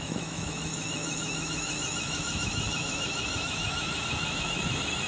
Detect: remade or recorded remade